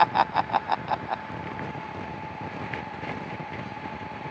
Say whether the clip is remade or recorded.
recorded